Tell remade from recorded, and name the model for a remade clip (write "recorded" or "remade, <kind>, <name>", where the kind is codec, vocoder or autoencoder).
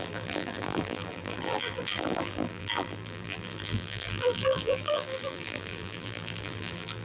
remade, vocoder, BigVGAN v2